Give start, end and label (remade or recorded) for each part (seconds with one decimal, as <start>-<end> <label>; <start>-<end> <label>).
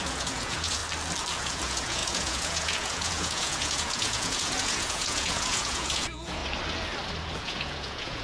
0.0-0.8 remade; 0.8-1.4 recorded; 1.4-6.4 remade; 6.4-7.4 recorded; 7.4-8.2 remade